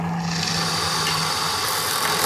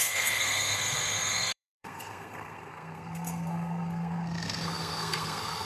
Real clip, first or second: first